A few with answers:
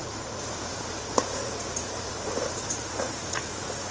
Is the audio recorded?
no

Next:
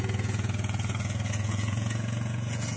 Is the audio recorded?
no